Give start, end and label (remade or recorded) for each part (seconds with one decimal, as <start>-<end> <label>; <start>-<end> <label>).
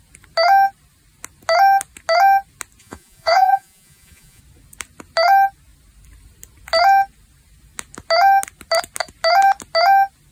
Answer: 0.0-2.8 recorded; 2.8-4.4 remade; 4.4-10.3 recorded